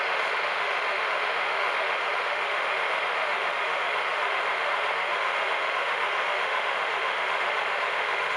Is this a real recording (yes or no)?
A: no